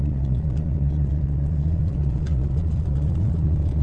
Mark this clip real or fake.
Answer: fake